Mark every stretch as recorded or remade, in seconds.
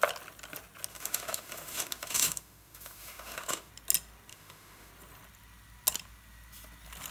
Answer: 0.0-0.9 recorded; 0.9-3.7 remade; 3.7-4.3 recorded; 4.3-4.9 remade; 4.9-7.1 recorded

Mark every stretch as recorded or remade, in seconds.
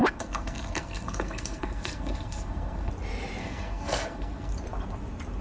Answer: 0.0-2.9 remade; 2.9-3.4 recorded; 3.4-4.5 remade; 4.5-5.4 recorded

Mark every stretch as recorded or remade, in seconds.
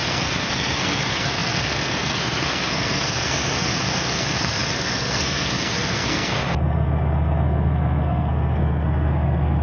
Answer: 0.0-9.6 remade